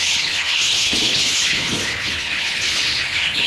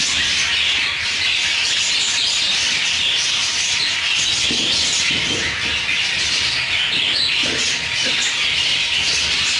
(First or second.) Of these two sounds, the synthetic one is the first